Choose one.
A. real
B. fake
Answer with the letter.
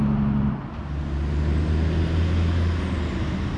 A